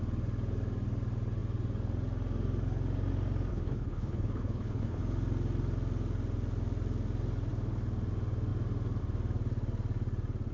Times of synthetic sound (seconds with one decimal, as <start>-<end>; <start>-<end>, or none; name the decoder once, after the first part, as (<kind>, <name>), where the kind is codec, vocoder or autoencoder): 3.5-5.0 (codec, HILCodec)